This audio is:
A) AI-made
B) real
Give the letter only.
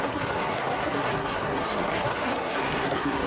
A